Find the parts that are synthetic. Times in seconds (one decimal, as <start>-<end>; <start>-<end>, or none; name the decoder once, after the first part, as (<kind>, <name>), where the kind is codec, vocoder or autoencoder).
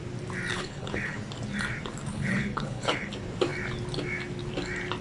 0.5-1.2 (codec, HILCodec); 2.1-3.1